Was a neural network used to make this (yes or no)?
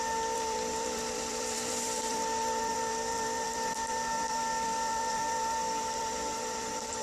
yes